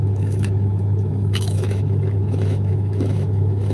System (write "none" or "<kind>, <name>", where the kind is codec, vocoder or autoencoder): autoencoder, DAC-VAE